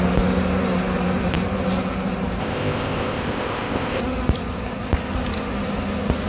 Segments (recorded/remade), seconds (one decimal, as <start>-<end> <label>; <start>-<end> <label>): 0.0-2.4 recorded; 2.4-4.0 remade; 4.0-6.3 recorded